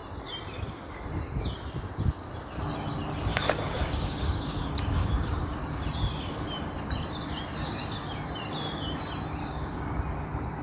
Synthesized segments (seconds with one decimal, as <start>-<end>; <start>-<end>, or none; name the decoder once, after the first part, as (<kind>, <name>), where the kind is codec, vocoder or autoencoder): 3.3-5.8 (codec, DAC); 9.4-10.0